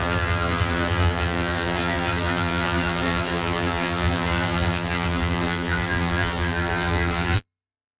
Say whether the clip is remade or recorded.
remade